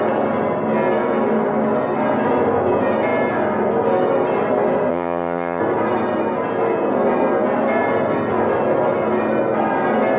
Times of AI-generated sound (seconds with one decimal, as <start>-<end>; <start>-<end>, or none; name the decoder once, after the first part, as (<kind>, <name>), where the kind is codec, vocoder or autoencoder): 4.9-5.6 (vocoder, HiFi-GAN)